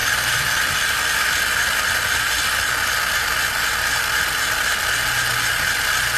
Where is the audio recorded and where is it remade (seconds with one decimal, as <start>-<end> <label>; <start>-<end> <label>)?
0.0-6.2 recorded